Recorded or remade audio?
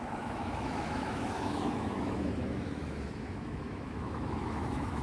remade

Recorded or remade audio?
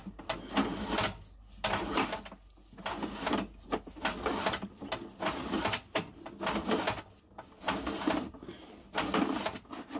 recorded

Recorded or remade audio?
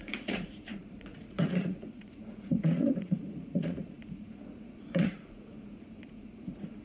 remade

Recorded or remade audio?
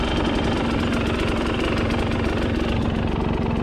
recorded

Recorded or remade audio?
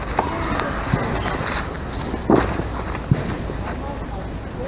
recorded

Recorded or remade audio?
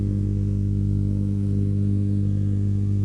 remade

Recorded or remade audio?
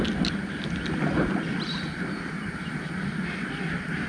recorded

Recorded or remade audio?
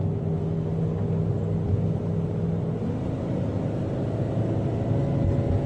recorded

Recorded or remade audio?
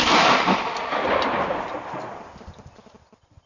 recorded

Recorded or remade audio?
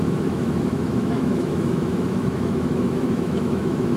remade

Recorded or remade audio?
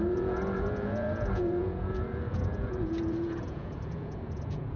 remade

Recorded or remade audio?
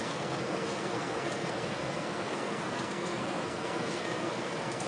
remade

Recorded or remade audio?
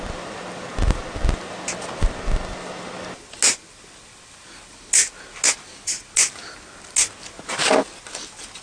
recorded